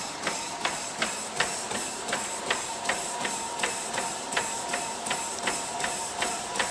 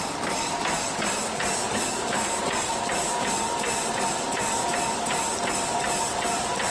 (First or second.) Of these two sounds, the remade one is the first